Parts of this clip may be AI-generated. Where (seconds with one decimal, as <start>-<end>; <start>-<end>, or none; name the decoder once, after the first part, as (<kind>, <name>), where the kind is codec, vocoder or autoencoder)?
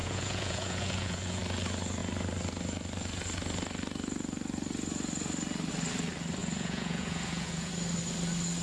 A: 0.0-1.4 (vocoder, Vocos); 6.4-7.7